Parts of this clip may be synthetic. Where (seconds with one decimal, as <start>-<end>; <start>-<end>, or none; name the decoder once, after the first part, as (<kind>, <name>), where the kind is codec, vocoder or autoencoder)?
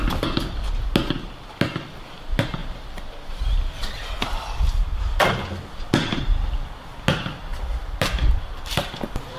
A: 2.6-6.2 (vocoder, BigVGAN v2); 7.5-9.4